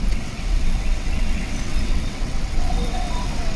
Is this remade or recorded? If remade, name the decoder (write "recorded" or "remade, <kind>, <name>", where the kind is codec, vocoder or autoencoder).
remade, vocoder, WaveNeXt